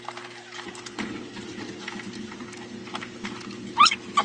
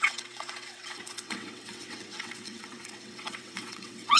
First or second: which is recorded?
first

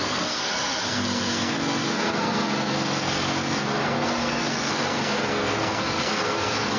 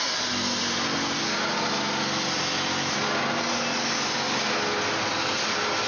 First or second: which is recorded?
second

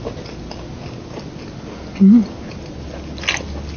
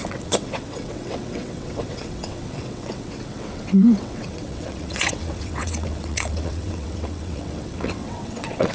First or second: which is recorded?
first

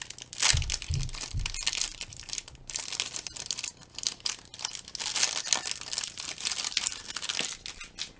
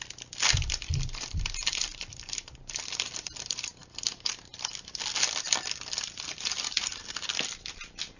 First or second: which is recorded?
first